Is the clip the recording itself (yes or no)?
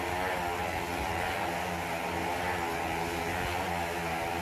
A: yes